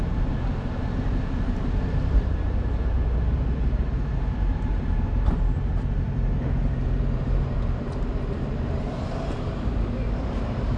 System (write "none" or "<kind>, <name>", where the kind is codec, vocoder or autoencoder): vocoder, BigVGAN v2